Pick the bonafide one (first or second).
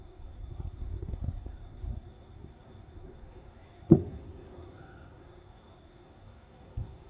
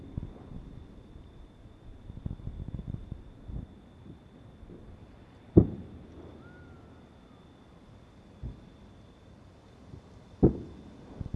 second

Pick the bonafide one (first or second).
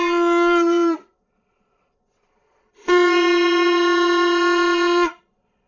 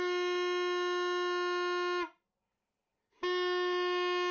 second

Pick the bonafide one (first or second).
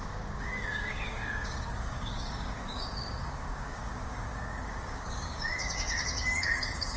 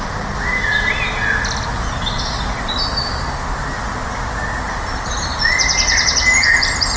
second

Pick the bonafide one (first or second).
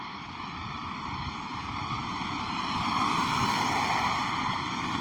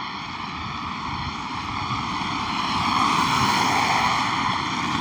second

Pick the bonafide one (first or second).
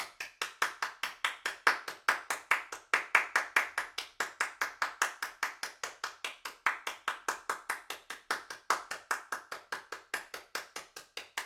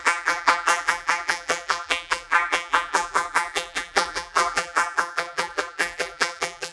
first